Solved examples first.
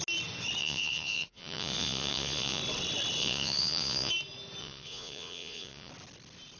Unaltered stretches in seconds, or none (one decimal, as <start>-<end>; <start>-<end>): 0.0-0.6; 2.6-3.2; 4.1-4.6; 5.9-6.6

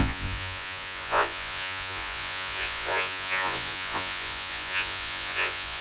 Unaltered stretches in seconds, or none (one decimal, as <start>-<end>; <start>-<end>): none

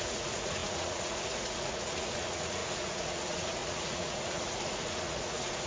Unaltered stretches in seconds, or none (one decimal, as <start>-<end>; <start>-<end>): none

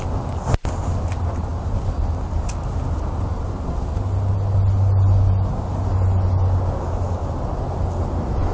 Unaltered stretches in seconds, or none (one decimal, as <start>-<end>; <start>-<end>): 0.0-8.5